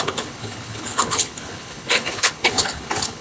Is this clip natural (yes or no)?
no